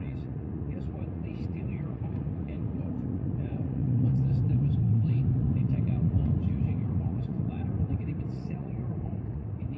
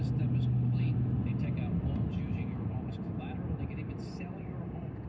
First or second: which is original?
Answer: second